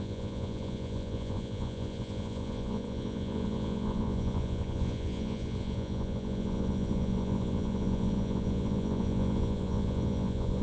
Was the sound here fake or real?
fake